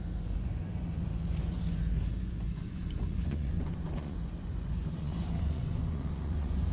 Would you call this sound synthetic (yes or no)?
yes